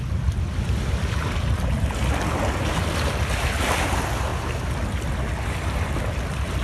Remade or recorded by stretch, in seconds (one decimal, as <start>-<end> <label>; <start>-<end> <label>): 0.0-6.6 recorded